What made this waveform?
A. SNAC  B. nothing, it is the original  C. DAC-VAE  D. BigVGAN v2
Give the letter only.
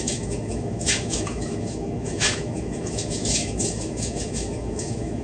C